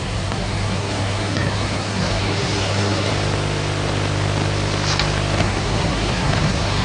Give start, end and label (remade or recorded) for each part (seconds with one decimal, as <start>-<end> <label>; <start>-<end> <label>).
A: 0.0-3.1 remade; 3.1-5.4 recorded; 5.4-6.8 remade